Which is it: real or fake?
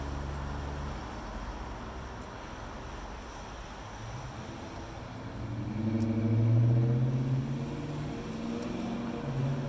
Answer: real